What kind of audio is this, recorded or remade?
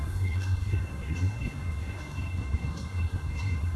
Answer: remade